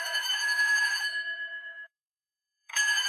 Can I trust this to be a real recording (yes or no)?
no